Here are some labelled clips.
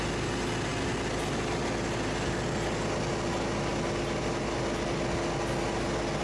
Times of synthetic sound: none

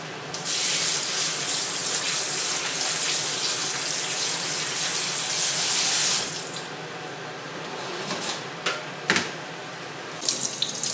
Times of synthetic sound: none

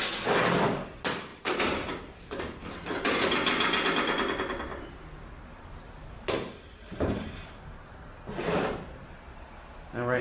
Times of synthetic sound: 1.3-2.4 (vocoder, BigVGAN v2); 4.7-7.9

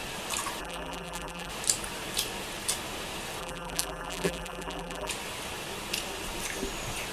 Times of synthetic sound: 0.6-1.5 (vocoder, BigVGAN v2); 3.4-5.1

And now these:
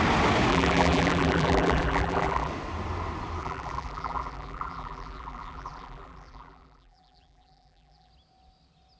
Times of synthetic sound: 0.5-2.5 (vocoder, BigVGAN v2); 3.4-8.1